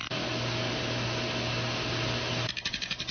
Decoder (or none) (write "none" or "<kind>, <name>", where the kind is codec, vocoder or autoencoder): none